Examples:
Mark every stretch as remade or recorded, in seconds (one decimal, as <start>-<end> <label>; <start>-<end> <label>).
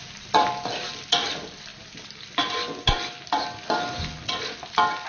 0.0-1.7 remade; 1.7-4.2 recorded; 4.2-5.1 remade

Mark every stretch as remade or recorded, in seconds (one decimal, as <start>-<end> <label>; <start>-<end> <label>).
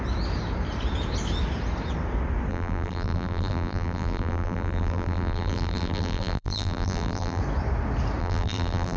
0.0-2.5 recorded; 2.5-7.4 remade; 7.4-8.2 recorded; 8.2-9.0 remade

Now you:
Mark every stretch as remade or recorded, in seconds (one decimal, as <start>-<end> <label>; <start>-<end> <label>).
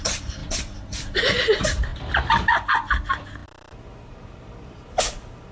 0.0-0.4 remade; 0.4-1.2 recorded; 1.2-1.9 remade; 1.9-4.1 recorded; 4.1-5.5 remade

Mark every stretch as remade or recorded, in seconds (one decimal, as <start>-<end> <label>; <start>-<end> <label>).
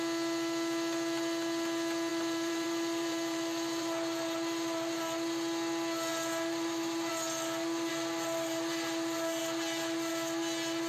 0.0-2.1 recorded; 2.1-5.0 remade; 5.0-6.1 recorded; 6.1-7.1 remade; 7.1-7.9 recorded; 7.9-10.1 remade; 10.1-10.9 recorded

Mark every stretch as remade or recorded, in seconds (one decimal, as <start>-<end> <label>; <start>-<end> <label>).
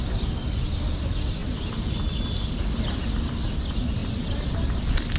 0.0-5.2 recorded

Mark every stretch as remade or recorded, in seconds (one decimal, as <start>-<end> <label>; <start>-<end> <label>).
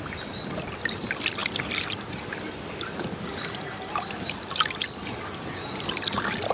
0.0-6.5 recorded